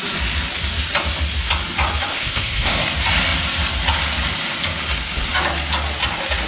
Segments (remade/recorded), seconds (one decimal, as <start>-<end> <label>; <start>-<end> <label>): 0.0-2.1 recorded; 2.1-2.8 remade; 2.8-6.5 recorded